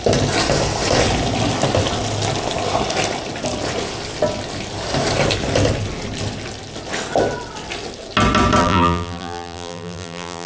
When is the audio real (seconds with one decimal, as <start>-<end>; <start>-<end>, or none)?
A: 0.0-8.6